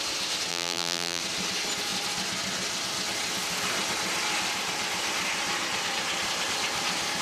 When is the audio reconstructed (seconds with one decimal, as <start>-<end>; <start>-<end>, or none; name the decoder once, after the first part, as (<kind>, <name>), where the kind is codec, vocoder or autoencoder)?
0.5-1.2 (vocoder, BigVGAN v2)